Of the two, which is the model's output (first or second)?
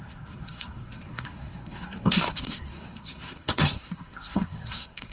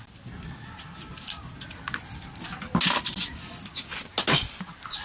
first